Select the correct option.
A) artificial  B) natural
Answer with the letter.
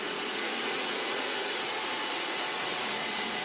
A